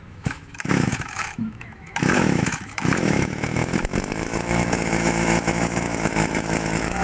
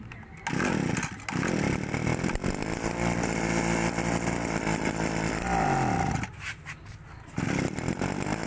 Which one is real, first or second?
second